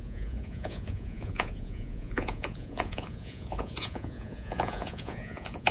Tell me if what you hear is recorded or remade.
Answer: remade